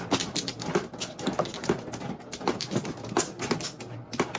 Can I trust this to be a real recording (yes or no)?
yes